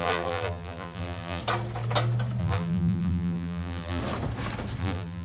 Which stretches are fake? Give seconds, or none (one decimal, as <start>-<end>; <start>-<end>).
0.0-1.4; 2.4-4.0; 4.8-5.2